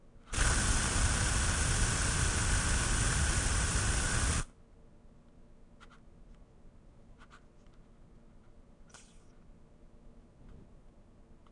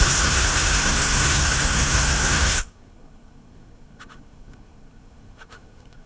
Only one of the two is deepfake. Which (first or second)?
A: second